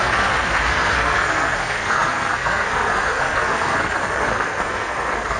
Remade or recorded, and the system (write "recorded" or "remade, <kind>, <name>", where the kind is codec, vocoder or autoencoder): remade, codec, SNAC